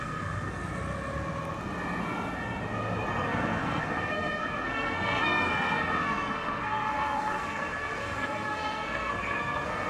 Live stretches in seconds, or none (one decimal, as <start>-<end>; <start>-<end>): 0.6-3.1